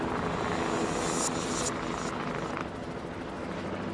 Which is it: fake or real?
real